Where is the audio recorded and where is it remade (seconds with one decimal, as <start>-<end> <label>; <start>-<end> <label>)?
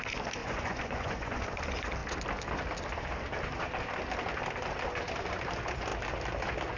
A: 0.0-0.4 recorded; 0.4-1.4 remade; 1.4-6.8 recorded